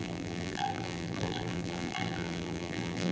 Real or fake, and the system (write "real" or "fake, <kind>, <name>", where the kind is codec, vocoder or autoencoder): fake, vocoder, BigVGAN v2